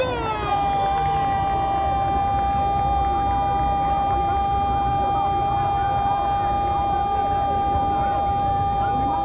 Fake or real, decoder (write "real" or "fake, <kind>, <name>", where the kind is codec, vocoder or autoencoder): real